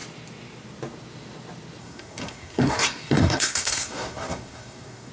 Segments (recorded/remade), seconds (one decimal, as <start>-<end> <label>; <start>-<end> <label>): 0.0-1.8 recorded; 1.8-5.1 remade